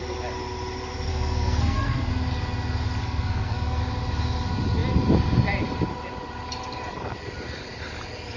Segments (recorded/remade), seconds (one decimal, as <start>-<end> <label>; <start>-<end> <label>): 0.0-1.1 recorded; 1.1-2.1 remade; 2.1-3.0 recorded; 3.0-3.8 remade; 3.8-8.4 recorded